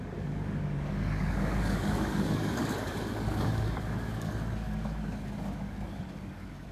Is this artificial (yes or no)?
yes